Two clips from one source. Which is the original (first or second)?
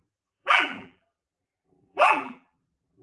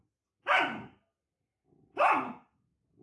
second